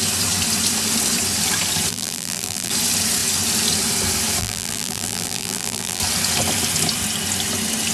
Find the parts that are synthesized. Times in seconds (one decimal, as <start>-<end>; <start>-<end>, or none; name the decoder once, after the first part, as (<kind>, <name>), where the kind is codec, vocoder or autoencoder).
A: 1.9-2.7 (vocoder, BigVGAN v2); 4.4-6.0